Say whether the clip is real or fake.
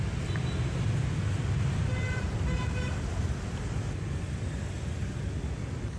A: real